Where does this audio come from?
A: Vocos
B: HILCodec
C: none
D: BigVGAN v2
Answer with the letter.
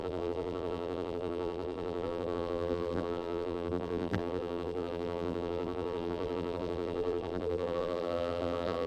D